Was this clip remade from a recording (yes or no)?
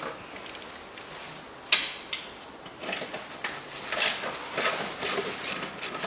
no